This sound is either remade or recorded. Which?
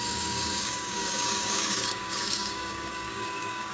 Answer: remade